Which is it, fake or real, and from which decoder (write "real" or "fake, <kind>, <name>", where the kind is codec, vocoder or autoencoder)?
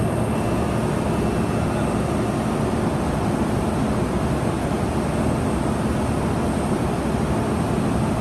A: real